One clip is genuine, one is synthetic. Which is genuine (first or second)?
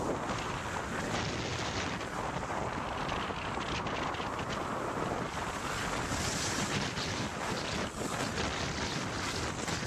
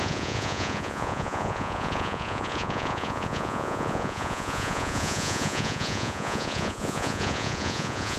first